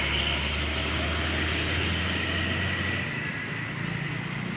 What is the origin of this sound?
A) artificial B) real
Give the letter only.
B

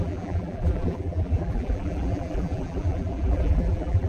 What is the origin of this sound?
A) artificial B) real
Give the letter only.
A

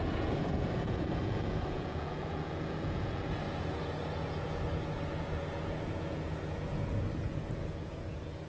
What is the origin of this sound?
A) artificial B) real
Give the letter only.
A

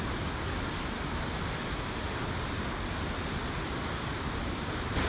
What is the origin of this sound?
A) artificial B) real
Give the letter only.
B